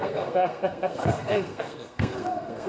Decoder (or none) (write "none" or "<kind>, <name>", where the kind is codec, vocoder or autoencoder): codec, SNAC